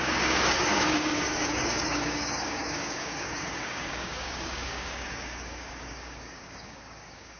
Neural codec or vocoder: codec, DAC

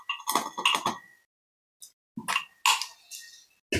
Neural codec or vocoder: none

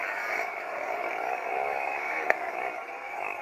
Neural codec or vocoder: codec, DAC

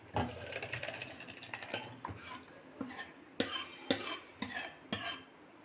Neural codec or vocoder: none